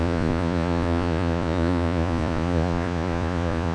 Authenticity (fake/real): fake